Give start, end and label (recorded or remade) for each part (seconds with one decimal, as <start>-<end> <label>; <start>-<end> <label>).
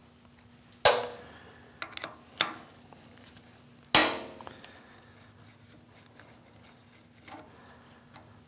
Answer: 0.0-8.5 recorded